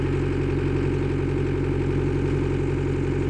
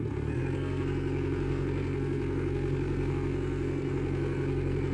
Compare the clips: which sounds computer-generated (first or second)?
second